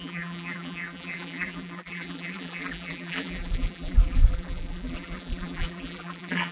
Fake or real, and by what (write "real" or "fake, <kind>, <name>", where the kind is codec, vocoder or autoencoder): fake, vocoder, BigVGAN v2